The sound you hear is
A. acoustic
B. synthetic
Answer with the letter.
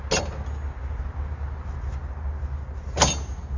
A